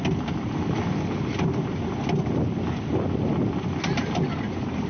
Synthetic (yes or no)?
no